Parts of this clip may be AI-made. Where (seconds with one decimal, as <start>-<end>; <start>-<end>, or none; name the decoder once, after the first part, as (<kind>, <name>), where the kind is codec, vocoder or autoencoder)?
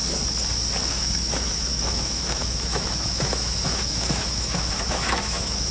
0.9-5.7 (autoencoder, DAC-VAE)